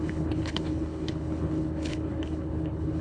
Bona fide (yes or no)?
no